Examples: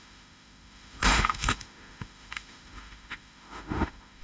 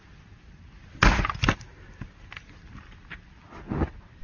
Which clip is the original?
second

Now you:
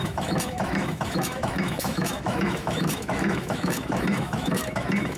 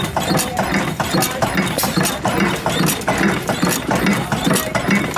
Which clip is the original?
second